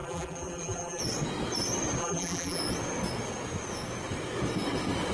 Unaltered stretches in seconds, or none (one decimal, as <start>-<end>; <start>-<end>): 1.0-2.0; 2.6-5.1